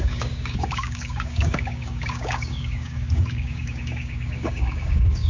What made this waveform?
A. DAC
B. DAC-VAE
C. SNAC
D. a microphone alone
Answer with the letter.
A